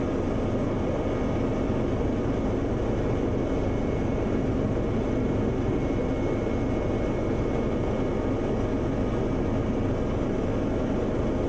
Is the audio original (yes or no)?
yes